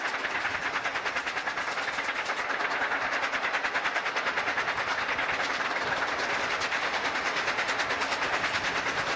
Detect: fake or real real